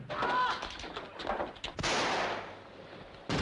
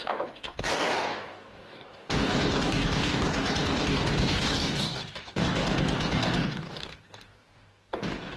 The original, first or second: first